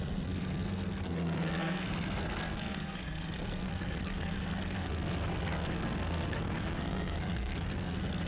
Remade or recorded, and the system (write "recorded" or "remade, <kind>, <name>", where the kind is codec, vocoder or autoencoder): remade, codec, SNAC